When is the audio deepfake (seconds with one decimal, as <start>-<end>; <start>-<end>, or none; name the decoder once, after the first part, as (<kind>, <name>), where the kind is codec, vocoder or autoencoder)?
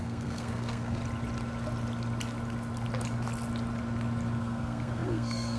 0.0-1.0 (codec, SNAC); 4.4-5.6